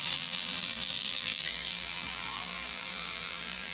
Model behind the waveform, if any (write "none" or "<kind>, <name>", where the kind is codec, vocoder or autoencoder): vocoder, BigVGAN v2